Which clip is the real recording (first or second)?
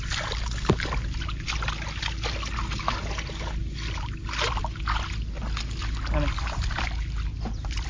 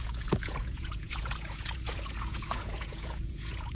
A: first